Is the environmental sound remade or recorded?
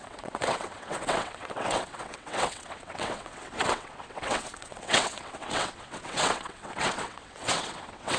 remade